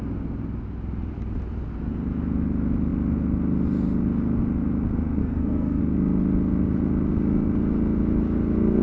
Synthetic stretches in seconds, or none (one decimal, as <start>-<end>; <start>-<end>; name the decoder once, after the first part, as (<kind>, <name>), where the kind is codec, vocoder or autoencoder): 5.2-5.8 (codec, SNAC)